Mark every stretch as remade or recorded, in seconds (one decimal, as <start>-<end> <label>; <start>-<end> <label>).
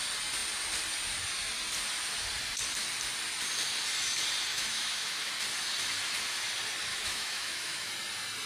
0.0-4.5 recorded; 4.5-5.3 remade; 5.3-6.9 recorded; 6.9-7.9 remade; 7.9-8.5 recorded